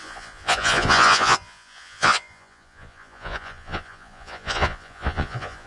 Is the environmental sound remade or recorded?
remade